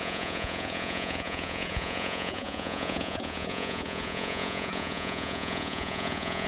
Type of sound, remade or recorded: remade